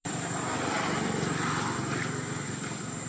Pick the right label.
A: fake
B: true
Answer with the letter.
A